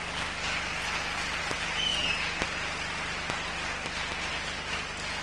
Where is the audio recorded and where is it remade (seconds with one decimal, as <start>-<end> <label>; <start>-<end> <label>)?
0.0-5.2 recorded